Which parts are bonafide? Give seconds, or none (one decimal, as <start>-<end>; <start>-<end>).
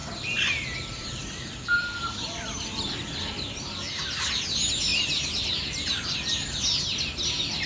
3.9-7.7